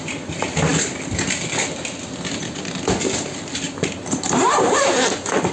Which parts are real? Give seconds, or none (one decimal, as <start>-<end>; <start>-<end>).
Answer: 0.0-5.5

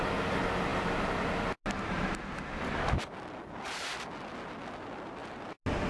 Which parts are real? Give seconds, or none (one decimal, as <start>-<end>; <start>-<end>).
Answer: 0.0-5.9

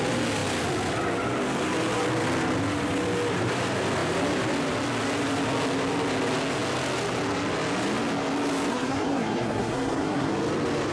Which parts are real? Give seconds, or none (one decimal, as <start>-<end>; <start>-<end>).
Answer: 0.0-8.7; 10.3-10.9

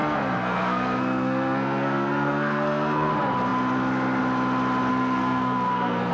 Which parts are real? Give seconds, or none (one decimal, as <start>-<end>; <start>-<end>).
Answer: 3.1-4.9